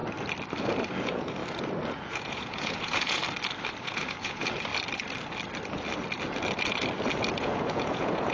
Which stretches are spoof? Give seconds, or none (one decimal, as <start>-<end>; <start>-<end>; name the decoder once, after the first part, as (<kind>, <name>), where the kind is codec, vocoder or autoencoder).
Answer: 0.6-1.4 (vocoder, Vocos); 1.9-3.2; 3.8-4.7; 7.3-8.3